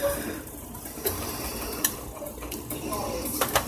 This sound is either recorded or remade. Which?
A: remade